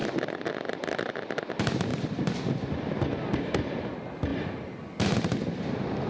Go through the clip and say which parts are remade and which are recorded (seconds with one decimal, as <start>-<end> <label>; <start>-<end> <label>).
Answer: 0.0-1.1 remade; 1.1-1.9 recorded; 1.9-3.1 remade; 3.1-6.1 recorded